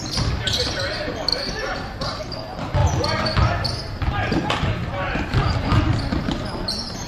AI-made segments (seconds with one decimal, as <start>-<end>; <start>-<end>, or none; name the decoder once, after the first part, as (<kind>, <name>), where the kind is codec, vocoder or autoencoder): 1.3-2.2 (vocoder, BigVGAN v2)